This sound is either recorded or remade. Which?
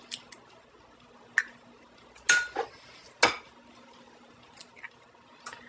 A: recorded